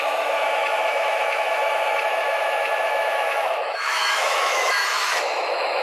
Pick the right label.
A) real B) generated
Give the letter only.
B